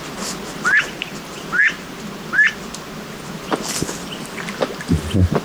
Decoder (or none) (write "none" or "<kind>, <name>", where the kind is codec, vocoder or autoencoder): none